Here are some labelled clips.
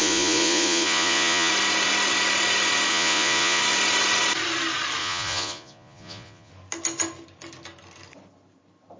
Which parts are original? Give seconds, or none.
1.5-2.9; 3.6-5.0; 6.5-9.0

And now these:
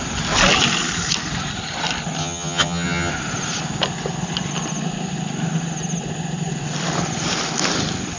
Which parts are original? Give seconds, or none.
0.0-2.2; 3.1-8.2